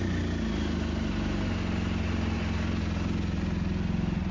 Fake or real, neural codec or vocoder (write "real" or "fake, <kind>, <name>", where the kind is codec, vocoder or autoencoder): real